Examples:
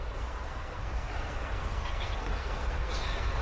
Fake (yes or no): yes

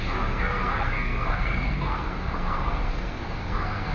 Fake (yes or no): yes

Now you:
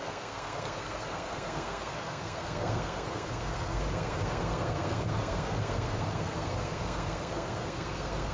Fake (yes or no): yes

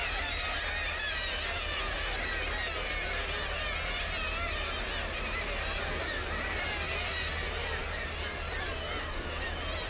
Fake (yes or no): no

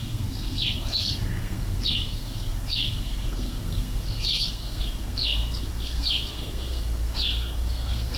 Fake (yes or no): yes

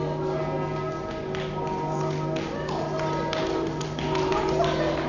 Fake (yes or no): no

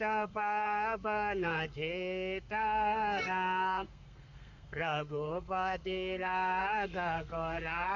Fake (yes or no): yes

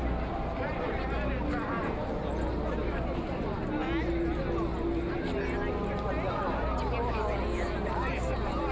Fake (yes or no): no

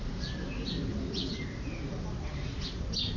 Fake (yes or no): no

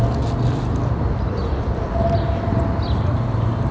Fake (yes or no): no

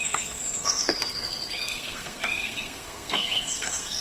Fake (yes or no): yes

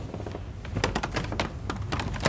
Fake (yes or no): no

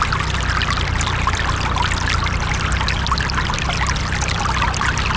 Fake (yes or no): no